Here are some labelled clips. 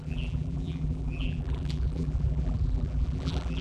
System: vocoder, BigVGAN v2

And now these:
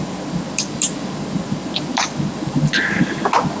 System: none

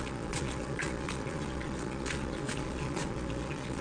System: vocoder, Vocos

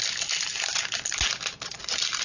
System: none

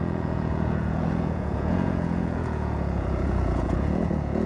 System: vocoder, Vocos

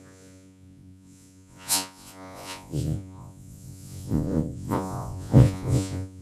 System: vocoder, Vocos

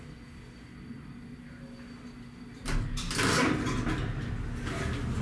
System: none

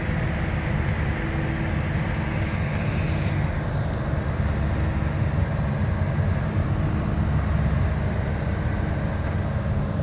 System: none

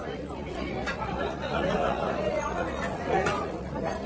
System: vocoder, Vocos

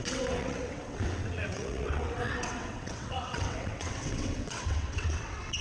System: vocoder, WaveNeXt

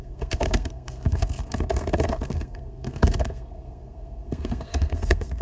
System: codec, SNAC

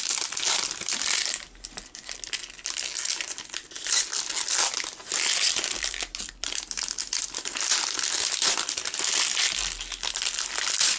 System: none